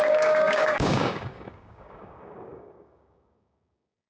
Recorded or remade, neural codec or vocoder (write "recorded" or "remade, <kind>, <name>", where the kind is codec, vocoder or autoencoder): remade, codec, DAC